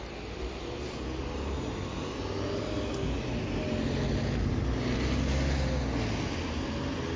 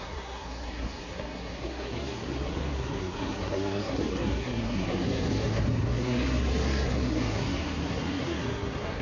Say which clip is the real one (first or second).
first